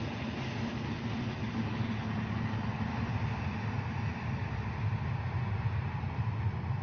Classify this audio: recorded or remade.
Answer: recorded